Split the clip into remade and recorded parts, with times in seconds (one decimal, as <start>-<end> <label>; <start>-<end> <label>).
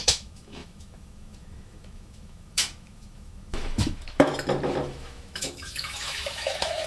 0.0-4.3 remade; 4.3-4.9 recorded; 4.9-6.9 remade